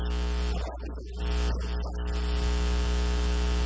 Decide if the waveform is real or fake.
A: real